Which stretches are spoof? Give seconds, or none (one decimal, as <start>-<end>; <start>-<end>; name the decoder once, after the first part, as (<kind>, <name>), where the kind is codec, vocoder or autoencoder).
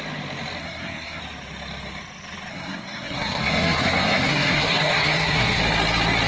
0.6-1.2 (codec, SNAC); 2.5-5.6